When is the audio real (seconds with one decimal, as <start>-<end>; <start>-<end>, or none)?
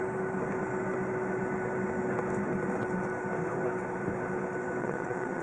0.0-4.8